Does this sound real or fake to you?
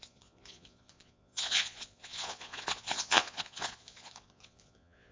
fake